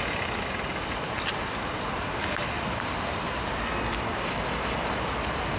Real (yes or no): yes